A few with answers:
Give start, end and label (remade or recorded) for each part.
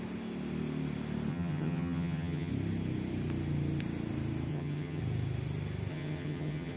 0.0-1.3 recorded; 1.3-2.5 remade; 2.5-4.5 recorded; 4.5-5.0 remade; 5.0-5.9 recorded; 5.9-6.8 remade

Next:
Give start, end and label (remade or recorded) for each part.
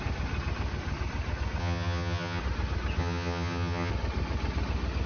0.0-1.6 recorded; 1.6-2.4 remade; 2.4-3.0 recorded; 3.0-3.9 remade; 3.9-5.1 recorded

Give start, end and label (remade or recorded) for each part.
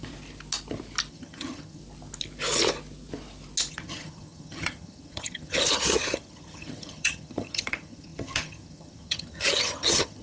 0.0-1.1 recorded; 1.1-1.8 remade; 1.8-3.7 recorded; 3.7-10.2 remade